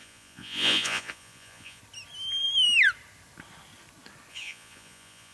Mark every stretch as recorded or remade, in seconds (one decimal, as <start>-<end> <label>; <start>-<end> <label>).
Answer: 0.0-1.8 remade; 1.8-4.3 recorded; 4.3-5.3 remade